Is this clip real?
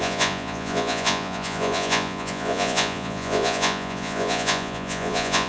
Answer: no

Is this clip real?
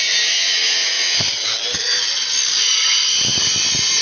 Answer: yes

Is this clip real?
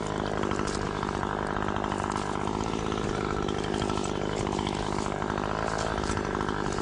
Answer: yes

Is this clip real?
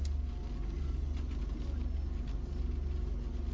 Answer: yes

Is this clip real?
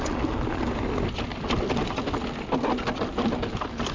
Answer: yes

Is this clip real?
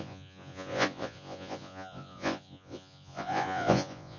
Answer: no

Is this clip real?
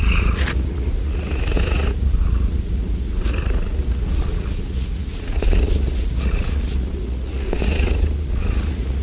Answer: no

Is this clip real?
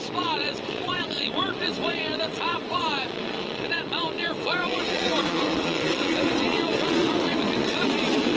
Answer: no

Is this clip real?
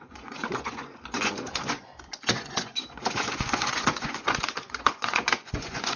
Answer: no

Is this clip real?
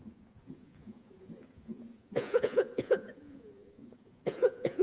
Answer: no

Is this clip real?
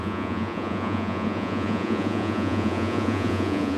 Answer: no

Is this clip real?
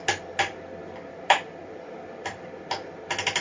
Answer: yes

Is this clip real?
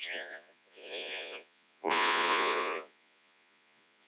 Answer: no